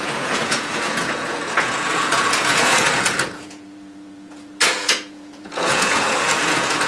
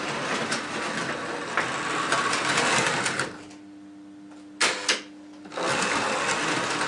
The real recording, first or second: second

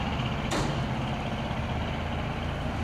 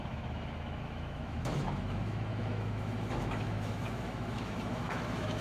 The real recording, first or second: first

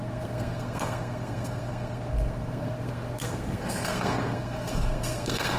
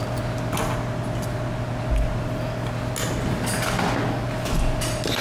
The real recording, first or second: second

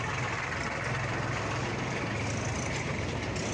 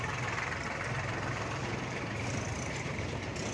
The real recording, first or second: first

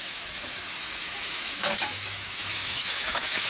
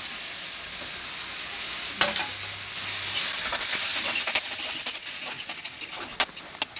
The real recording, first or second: second